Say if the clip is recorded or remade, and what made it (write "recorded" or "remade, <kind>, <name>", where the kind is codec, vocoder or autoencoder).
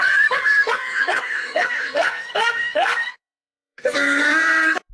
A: remade, codec, SNAC